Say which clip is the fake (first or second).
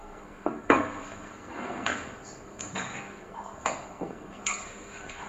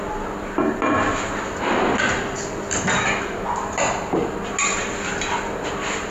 first